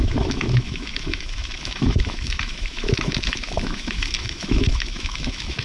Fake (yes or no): yes